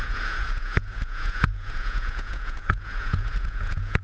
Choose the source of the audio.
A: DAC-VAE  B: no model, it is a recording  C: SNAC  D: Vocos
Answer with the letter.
D